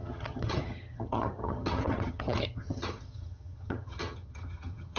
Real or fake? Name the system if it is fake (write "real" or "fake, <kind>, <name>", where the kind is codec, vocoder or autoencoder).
fake, vocoder, HiFi-GAN